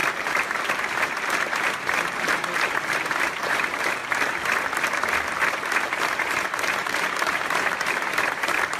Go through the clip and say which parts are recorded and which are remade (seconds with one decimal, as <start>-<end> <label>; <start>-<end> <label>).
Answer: 0.0-4.0 remade; 4.0-6.0 recorded; 6.0-8.8 remade